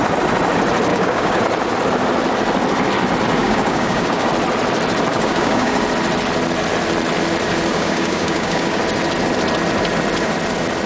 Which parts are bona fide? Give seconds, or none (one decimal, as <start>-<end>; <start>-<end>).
0.0-0.9; 1.4-3.4; 4.3-5.1; 5.8-7.7; 8.8-10.9